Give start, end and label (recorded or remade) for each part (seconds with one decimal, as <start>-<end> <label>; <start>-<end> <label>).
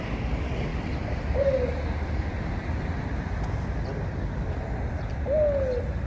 0.0-0.7 remade; 0.7-1.8 recorded; 1.8-2.3 remade; 2.3-6.1 recorded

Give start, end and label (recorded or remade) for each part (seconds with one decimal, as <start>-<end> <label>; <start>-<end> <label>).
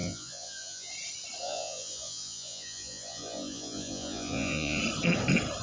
0.0-0.9 remade; 0.9-1.4 recorded; 1.4-4.8 remade; 4.8-5.6 recorded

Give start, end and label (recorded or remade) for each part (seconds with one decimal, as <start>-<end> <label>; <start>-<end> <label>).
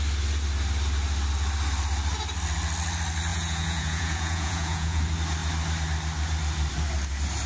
0.0-3.3 recorded; 3.3-5.0 remade; 5.0-7.5 recorded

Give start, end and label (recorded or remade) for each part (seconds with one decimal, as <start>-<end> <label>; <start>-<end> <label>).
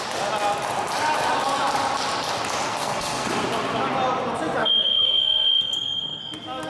0.0-2.7 recorded; 2.7-3.3 remade; 3.3-4.6 recorded; 4.6-6.2 remade; 6.2-6.7 recorded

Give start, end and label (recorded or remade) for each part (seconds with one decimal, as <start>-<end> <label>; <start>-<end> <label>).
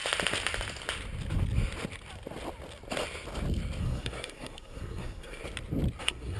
0.0-3.8 recorded; 3.8-5.4 remade; 5.4-6.0 recorded; 6.0-6.4 remade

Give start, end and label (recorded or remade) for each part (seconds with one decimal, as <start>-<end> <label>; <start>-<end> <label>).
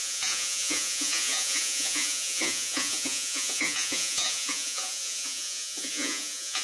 0.0-6.6 remade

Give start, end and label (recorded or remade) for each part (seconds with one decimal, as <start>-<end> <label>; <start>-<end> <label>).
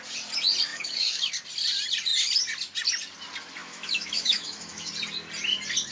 0.0-0.7 recorded; 0.7-1.3 remade; 1.3-3.6 recorded; 3.6-4.9 remade; 4.9-5.9 recorded